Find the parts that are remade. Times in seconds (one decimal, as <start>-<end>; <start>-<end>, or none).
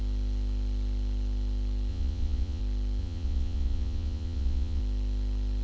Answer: 1.9-2.6; 3.0-4.8